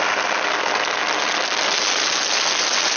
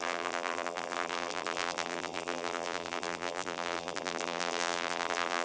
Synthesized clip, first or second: second